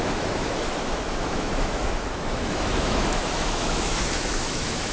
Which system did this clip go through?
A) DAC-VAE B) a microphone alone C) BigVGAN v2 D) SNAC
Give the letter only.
A